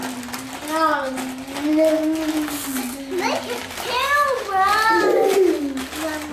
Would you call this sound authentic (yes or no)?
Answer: yes